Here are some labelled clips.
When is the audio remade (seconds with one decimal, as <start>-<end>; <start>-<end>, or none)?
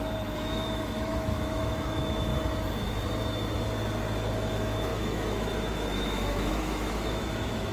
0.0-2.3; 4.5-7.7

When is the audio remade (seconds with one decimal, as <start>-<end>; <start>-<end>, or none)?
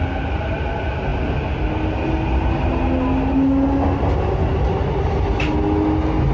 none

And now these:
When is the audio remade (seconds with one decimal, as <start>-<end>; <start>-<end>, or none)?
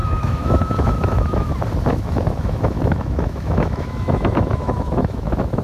0.0-1.5; 1.9-5.6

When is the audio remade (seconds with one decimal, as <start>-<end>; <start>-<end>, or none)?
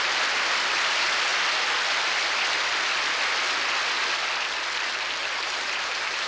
5.2-6.3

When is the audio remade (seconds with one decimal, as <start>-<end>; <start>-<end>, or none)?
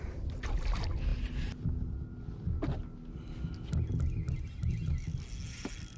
none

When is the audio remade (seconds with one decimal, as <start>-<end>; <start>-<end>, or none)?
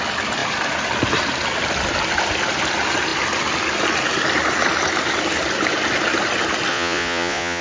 6.7-7.6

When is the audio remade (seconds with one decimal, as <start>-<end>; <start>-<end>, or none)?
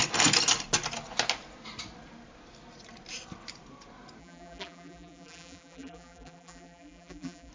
4.2-7.5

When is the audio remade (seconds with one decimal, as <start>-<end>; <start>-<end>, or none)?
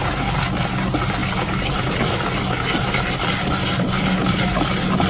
none